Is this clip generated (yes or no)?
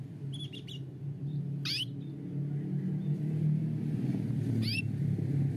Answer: no